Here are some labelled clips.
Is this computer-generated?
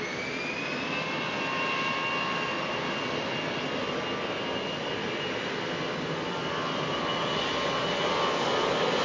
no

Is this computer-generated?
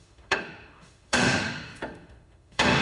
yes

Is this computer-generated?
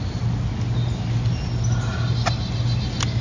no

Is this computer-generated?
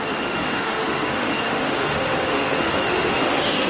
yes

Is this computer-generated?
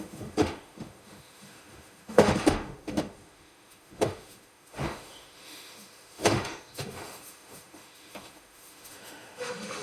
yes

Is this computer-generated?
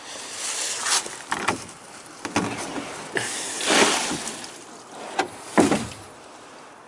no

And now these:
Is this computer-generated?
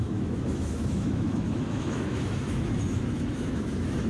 yes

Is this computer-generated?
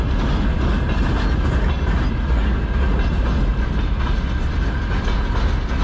no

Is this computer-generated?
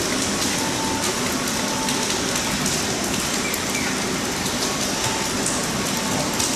no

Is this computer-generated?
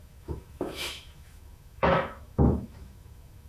yes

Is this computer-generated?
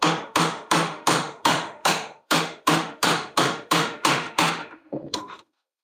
yes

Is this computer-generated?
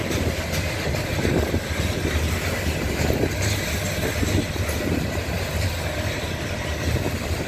no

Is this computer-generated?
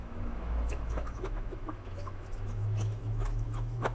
yes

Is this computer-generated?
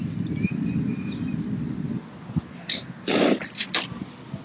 no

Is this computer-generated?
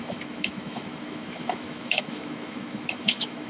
yes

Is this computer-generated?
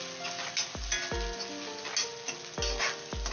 no